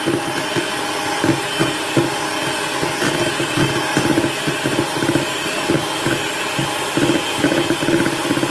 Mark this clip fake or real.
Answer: real